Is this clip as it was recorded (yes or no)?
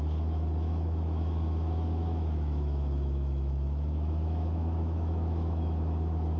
no